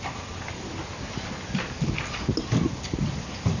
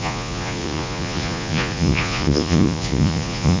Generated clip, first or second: second